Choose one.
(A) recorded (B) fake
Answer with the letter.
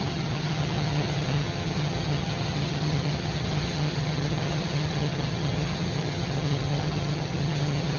B